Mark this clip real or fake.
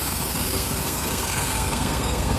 fake